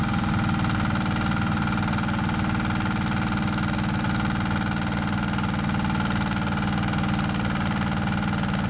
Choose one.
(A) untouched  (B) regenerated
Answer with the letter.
A